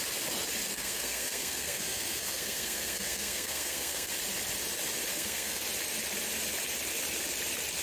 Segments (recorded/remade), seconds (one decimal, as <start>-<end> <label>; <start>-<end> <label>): 0.0-0.7 recorded; 0.7-4.1 remade; 4.1-5.1 recorded; 5.1-5.6 remade; 5.6-7.8 recorded